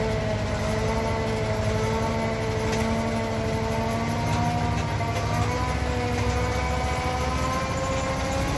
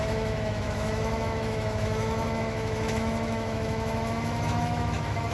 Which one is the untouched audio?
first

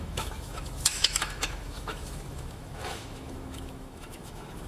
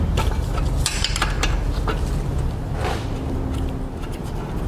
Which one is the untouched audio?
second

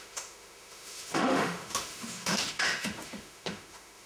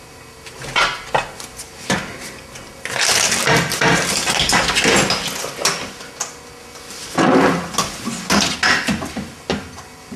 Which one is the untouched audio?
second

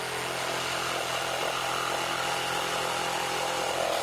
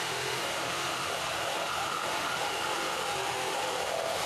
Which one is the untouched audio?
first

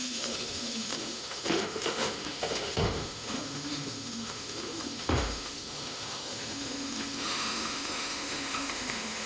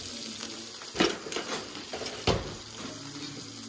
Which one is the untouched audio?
second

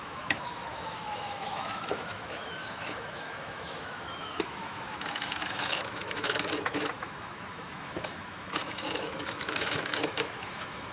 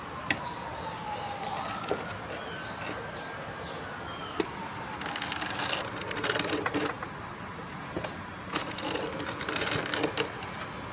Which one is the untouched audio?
second